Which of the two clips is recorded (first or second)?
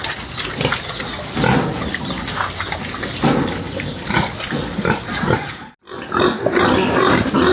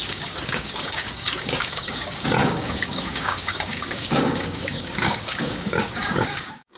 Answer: first